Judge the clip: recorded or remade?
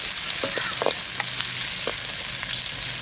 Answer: recorded